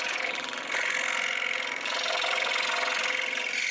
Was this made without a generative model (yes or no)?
no